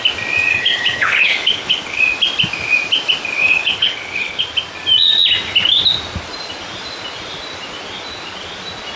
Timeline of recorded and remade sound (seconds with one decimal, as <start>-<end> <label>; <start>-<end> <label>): 0.0-0.5 recorded; 0.5-2.0 remade; 2.0-3.4 recorded; 3.4-4.4 remade; 4.4-9.0 recorded